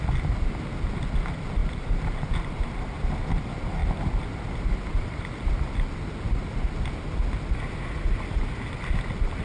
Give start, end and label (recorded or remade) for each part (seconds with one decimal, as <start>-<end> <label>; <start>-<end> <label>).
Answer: 0.0-1.6 recorded; 1.6-3.1 remade; 3.1-9.4 recorded